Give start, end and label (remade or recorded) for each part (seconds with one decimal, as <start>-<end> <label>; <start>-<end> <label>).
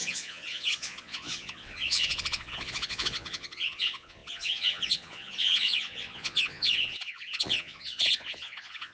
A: 0.0-8.9 remade